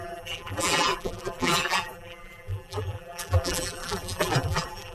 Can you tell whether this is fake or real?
fake